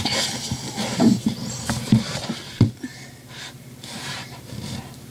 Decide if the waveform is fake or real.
fake